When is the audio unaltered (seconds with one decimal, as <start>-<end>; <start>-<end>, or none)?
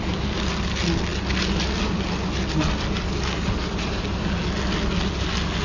0.0-5.6